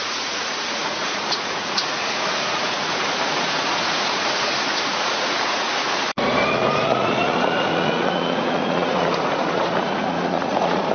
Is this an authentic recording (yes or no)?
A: no